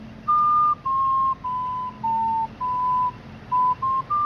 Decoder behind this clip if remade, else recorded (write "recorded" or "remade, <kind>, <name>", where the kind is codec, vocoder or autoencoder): recorded